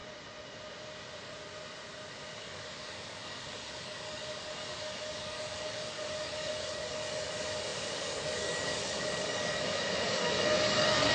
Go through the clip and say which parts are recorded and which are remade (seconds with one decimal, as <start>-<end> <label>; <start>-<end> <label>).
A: 0.0-2.4 recorded; 2.4-11.1 remade